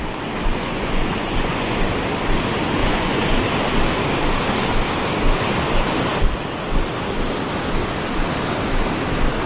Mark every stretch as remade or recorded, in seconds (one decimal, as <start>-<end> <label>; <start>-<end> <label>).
0.0-0.4 recorded; 0.4-1.8 remade; 1.8-2.8 recorded; 2.8-3.4 remade; 3.4-9.5 recorded